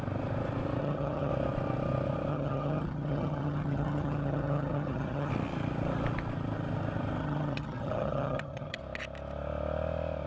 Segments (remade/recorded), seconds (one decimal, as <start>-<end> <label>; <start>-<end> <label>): 0.0-0.8 recorded; 0.8-1.3 remade; 1.3-2.3 recorded; 2.3-5.3 remade; 5.3-7.2 recorded; 7.2-8.8 remade; 8.8-10.3 recorded